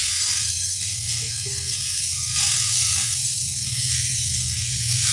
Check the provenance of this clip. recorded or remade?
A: remade